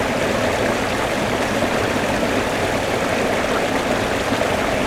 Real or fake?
real